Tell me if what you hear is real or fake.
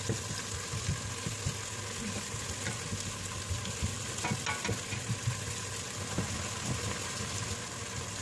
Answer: real